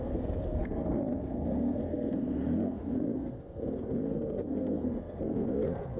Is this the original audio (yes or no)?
no